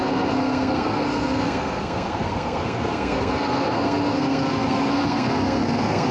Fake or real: fake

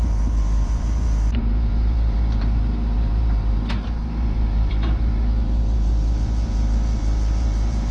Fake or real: fake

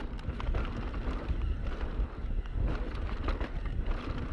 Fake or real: real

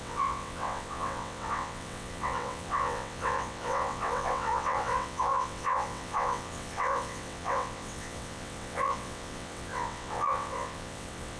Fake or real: fake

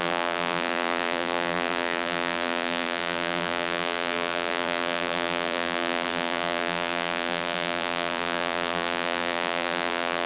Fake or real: fake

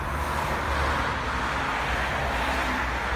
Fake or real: fake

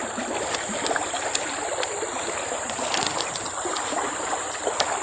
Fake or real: real